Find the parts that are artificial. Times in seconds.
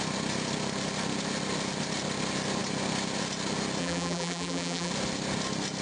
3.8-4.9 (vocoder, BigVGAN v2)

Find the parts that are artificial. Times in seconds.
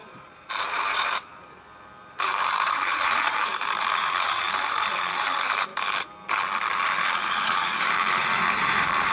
0.0-5.7 (vocoder, BigVGAN v2); 7.2-9.1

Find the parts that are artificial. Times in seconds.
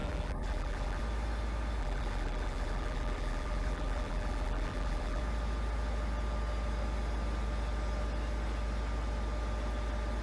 0.0-1.0 (vocoder, BigVGAN v2); 1.8-5.2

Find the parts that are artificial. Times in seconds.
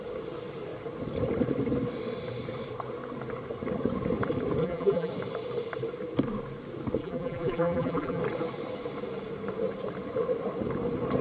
4.6-5.1 (vocoder, BigVGAN v2); 7.0-8.2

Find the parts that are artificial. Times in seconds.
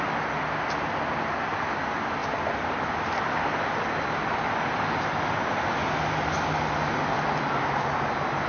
2.2-2.9 (vocoder, BigVGAN v2)